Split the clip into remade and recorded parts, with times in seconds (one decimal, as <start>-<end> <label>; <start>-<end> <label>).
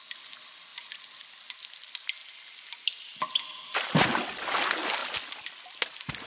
0.0-6.3 recorded